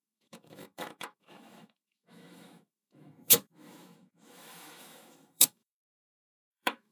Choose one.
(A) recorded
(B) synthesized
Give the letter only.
B